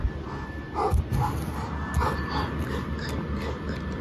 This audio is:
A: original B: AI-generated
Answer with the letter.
A